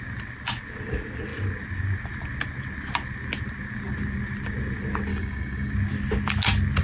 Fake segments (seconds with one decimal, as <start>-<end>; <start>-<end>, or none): 5.1-5.7